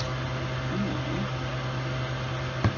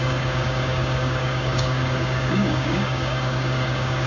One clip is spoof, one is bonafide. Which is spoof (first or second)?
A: second